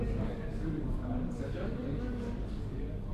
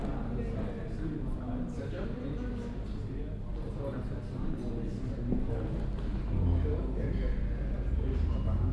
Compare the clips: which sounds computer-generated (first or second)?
first